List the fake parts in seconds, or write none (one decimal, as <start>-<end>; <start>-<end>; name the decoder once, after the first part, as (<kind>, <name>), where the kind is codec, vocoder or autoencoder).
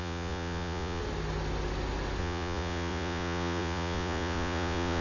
0.0-1.0 (vocoder, Vocos); 2.2-5.0